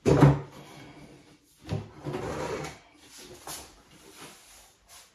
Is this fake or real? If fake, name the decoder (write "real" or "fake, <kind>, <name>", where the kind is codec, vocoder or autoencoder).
real